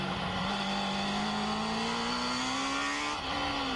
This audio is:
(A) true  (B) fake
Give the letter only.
A